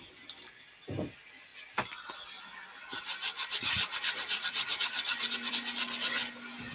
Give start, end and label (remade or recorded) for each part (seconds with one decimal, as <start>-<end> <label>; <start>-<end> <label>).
0.0-6.7 recorded